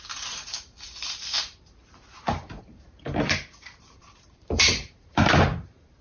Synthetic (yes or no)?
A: yes